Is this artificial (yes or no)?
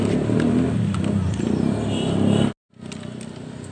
no